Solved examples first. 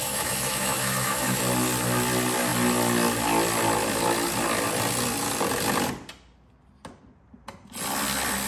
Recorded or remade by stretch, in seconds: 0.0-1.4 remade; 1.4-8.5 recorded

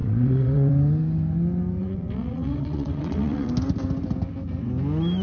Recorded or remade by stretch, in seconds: 0.0-0.7 remade; 0.7-1.8 recorded; 1.8-3.5 remade; 3.5-5.2 recorded

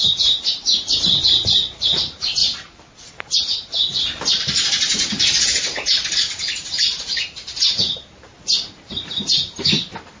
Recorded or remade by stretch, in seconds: 0.0-2.4 remade; 2.4-3.1 recorded; 3.1-10.2 remade

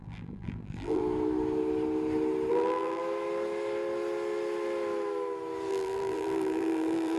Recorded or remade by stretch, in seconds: 0.0-1.0 remade; 1.0-2.5 recorded; 2.5-3.0 remade; 3.0-5.7 recorded; 5.7-7.2 remade

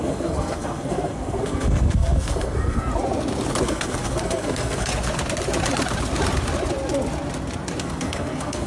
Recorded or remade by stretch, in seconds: 0.0-2.9 remade; 2.9-3.6 recorded; 3.6-4.9 remade; 4.9-7.8 recorded; 7.8-8.7 remade

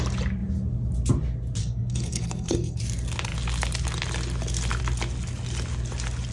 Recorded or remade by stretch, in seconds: 0.0-1.6 recorded; 1.6-2.8 remade; 2.8-6.3 recorded

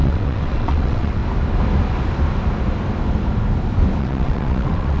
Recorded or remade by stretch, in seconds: 0.0-1.2 remade; 1.2-4.0 recorded; 4.0-5.0 remade

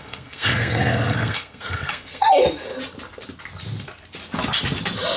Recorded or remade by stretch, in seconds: 0.0-2.3 remade; 2.3-5.2 recorded